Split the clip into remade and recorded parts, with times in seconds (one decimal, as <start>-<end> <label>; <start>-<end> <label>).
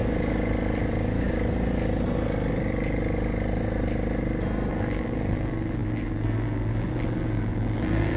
0.0-4.7 recorded; 4.7-8.2 remade